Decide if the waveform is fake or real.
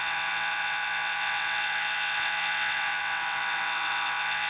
fake